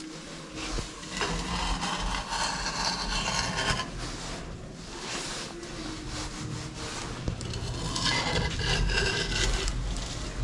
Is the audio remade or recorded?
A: recorded